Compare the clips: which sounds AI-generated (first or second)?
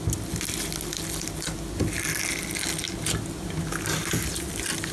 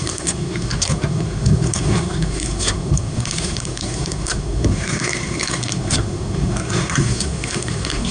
second